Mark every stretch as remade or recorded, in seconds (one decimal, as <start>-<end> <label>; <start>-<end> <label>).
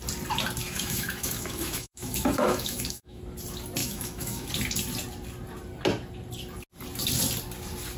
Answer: 0.0-0.6 recorded; 0.6-3.2 remade; 3.2-3.8 recorded; 3.8-4.5 remade; 4.5-8.0 recorded